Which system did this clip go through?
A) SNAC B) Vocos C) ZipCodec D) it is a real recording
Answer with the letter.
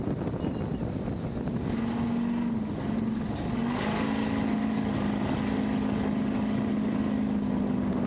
D